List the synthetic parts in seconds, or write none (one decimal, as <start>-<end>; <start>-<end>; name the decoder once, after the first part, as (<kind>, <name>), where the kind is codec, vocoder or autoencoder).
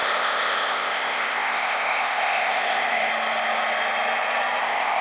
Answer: 0.0-3.1 (codec, ZipCodec); 4.6-5.0